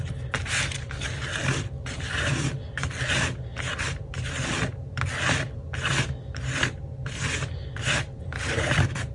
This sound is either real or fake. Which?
real